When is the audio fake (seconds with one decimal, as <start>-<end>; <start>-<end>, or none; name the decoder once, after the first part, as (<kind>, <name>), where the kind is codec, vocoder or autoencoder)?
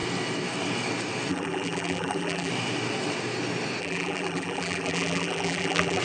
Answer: 1.3-2.5 (vocoder, BigVGAN v2); 3.8-6.0